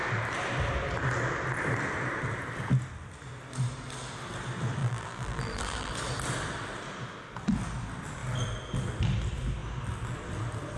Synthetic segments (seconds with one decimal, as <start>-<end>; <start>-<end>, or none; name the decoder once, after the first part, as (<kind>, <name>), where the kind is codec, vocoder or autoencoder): 4.8-5.9 (vocoder, BigVGAN v2)